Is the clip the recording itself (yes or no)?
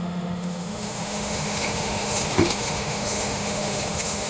no